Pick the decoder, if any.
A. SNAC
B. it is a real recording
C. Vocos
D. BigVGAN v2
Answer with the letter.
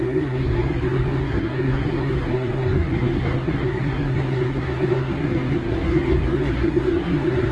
A